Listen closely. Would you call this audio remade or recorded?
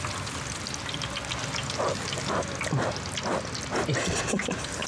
recorded